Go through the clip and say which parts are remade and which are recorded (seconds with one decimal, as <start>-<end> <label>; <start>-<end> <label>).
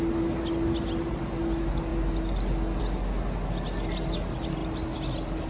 0.0-5.5 recorded